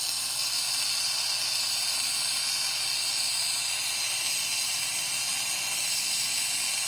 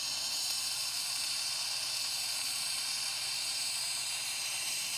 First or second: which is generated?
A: second